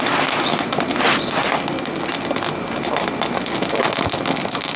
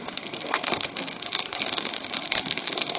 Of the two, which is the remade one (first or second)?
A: second